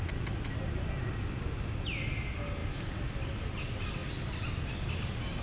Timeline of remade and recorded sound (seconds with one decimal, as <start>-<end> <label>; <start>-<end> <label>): 0.0-5.4 recorded